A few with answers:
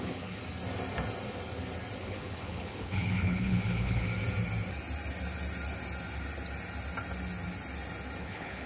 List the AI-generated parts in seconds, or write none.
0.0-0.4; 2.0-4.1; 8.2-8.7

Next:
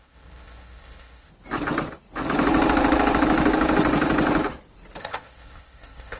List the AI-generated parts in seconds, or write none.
0.0-1.3; 5.0-6.2

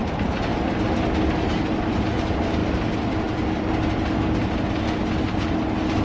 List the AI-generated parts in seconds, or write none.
none

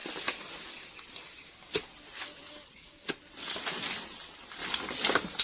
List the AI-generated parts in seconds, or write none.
none